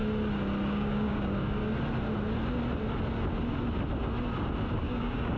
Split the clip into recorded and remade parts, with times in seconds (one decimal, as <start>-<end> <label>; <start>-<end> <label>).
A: 0.0-0.7 recorded; 0.7-1.6 remade; 1.6-4.8 recorded; 4.8-5.4 remade